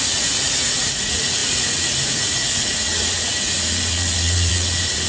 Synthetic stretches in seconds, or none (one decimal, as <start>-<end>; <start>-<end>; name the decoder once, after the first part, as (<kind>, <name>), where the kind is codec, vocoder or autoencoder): 0.0-5.1 (vocoder, Vocos)